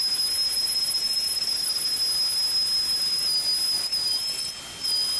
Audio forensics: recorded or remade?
recorded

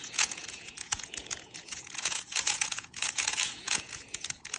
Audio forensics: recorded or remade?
remade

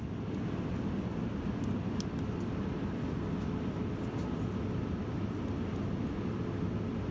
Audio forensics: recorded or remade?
recorded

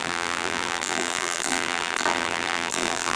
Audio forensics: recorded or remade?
remade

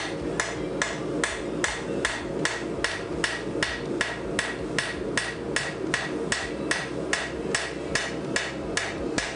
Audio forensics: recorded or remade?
recorded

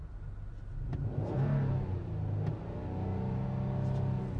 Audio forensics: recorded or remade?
recorded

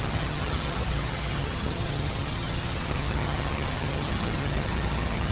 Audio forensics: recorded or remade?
remade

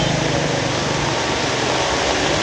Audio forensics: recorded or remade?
recorded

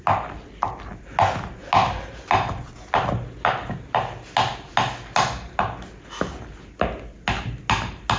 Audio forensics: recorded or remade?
recorded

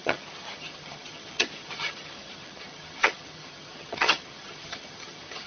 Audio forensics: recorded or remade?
remade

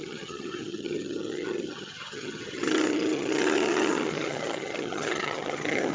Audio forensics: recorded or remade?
remade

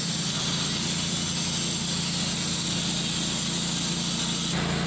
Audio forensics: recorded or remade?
recorded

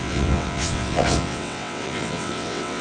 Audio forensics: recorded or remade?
remade